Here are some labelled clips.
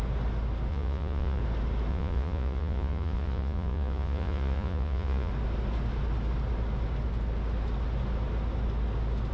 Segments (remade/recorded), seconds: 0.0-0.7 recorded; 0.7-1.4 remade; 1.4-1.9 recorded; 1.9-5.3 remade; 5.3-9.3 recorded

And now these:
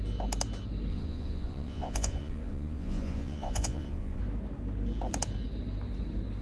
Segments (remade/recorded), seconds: 0.0-0.9 recorded; 0.9-4.2 remade; 4.2-6.4 recorded